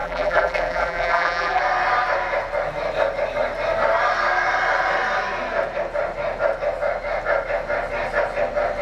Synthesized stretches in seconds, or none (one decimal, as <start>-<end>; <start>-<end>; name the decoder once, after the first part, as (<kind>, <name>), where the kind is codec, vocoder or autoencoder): 0.0-1.6 (vocoder, BigVGAN v2)